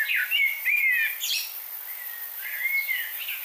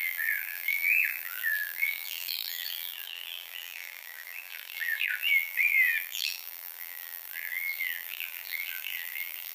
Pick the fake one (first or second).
second